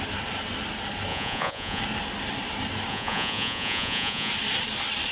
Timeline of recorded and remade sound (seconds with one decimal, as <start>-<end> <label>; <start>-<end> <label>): 0.0-1.1 recorded; 1.1-1.8 remade; 1.8-2.9 recorded; 2.9-4.3 remade; 4.3-5.1 recorded